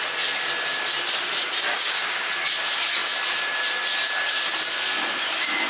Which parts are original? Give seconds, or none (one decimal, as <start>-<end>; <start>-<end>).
0.0-1.7; 2.3-5.7